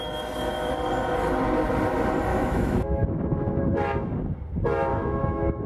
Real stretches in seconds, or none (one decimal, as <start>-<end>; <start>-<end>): 0.0-2.3; 3.6-4.9